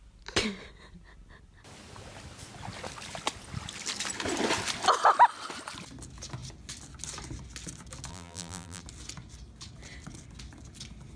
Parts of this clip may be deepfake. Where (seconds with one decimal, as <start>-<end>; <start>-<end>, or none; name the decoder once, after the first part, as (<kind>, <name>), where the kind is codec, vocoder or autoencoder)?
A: 8.1-8.8 (vocoder, BigVGAN v2)